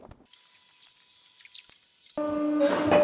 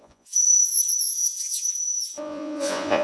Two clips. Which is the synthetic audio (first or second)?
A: second